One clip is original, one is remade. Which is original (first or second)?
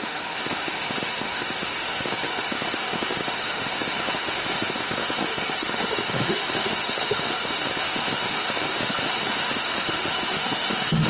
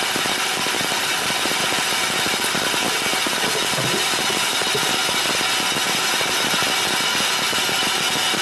second